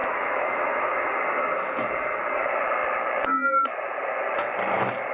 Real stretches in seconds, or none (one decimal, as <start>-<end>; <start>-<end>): 1.1-5.1